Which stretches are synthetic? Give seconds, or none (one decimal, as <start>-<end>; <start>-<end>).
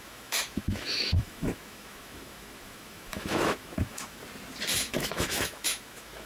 0.0-4.2; 4.7-6.3